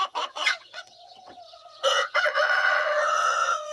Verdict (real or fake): fake